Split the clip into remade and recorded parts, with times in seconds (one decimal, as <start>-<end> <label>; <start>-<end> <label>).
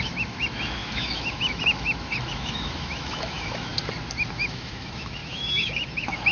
0.0-3.7 remade; 3.7-4.3 recorded; 4.3-6.3 remade